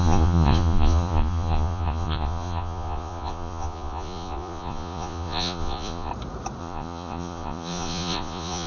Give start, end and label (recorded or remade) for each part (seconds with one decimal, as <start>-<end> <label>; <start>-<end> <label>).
0.0-6.1 remade; 6.1-6.6 recorded; 6.6-8.7 remade